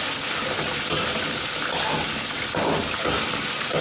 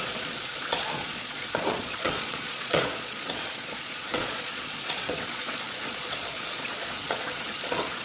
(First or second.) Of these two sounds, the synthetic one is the second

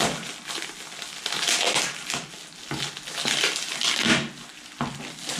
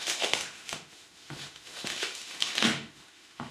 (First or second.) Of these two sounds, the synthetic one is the second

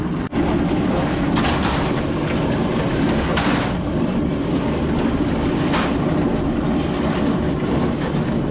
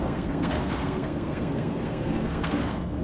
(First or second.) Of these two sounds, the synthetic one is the second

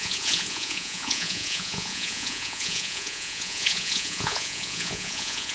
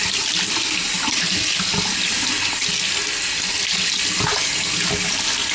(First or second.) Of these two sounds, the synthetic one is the first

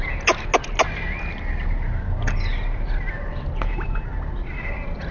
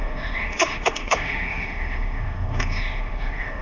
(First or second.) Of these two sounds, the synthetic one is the second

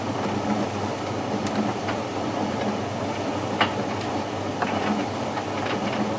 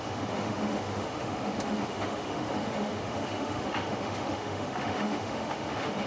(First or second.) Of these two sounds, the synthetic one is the second